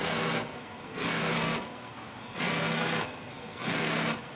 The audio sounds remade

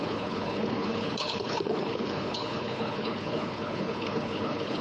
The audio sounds remade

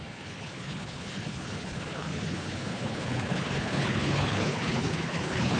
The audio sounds remade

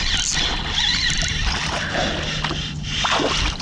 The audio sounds recorded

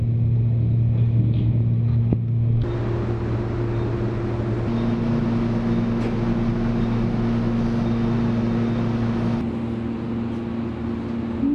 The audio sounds recorded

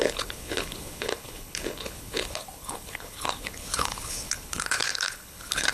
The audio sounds remade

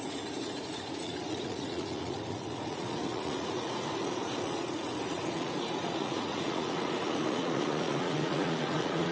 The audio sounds remade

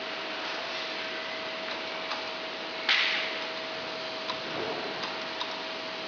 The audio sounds recorded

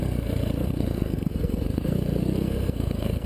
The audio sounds remade